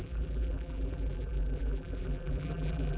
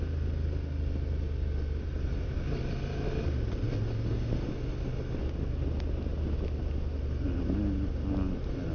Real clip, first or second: second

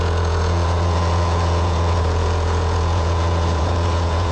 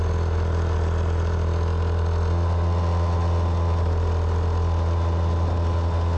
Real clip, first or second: second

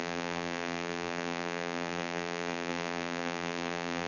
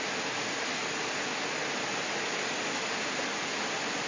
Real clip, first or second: second